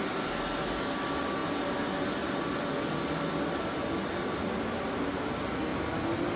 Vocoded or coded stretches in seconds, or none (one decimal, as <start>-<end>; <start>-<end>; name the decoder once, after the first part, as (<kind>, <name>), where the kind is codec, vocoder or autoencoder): none